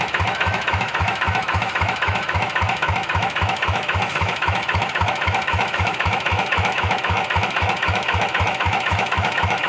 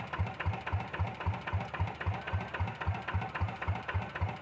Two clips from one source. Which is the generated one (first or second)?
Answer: first